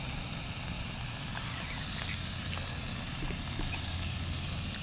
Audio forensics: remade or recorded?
recorded